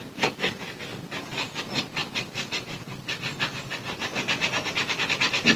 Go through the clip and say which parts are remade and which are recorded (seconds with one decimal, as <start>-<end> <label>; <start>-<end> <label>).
0.0-5.6 recorded